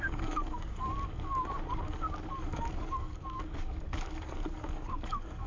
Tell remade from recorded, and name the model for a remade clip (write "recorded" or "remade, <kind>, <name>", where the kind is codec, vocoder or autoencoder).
remade, codec, DAC